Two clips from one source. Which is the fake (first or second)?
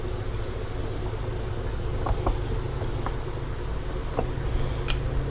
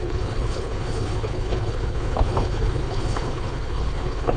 second